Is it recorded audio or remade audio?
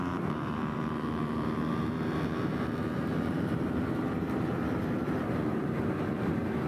remade